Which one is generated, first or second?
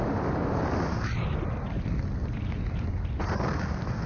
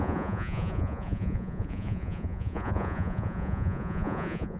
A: second